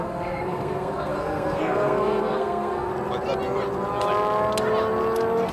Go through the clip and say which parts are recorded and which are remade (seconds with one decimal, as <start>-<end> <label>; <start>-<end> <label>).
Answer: 0.0-2.9 remade; 2.9-5.5 recorded